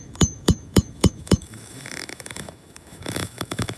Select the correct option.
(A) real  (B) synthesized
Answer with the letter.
B